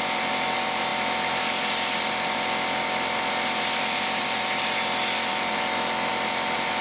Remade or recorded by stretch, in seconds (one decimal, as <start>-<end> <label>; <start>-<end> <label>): 0.0-6.8 remade